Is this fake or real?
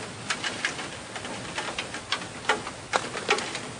real